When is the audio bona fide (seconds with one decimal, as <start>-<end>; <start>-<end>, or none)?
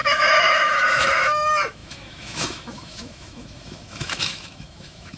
none